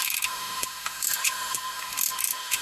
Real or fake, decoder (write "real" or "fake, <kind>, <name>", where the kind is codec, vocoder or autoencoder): fake, autoencoder, DAC-VAE